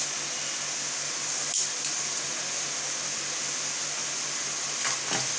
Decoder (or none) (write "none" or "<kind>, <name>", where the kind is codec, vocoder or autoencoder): none